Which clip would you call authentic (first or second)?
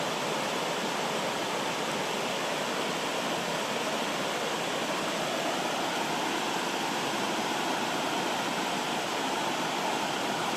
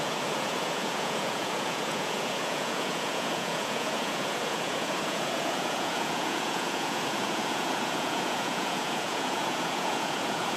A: first